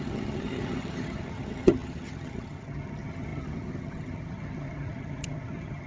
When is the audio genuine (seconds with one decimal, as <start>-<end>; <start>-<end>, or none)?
none